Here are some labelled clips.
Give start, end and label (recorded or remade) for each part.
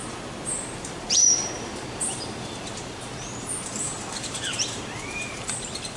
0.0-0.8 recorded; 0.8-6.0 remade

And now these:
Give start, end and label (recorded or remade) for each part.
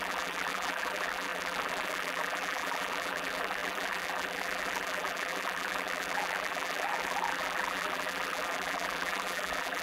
0.0-9.8 remade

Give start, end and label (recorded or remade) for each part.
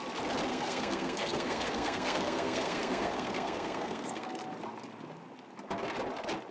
0.0-0.5 recorded; 0.5-4.4 remade; 4.4-6.5 recorded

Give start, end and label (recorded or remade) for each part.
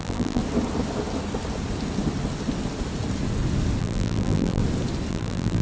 0.0-0.4 remade; 0.4-3.8 recorded; 3.8-4.6 remade; 4.6-5.1 recorded; 5.1-5.6 remade